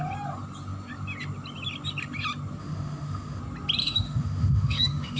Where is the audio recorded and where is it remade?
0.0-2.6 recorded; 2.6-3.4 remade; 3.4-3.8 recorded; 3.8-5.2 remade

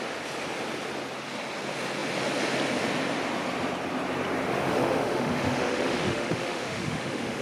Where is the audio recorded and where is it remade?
0.0-4.4 recorded; 4.4-7.4 remade

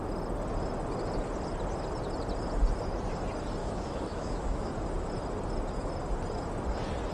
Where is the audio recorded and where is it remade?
0.0-3.6 recorded; 3.6-4.7 remade; 4.7-7.1 recorded

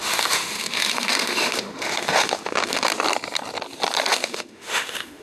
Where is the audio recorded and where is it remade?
0.0-2.9 remade; 2.9-4.1 recorded; 4.1-5.2 remade

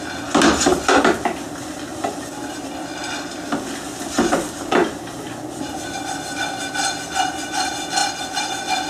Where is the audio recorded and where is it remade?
0.0-8.9 recorded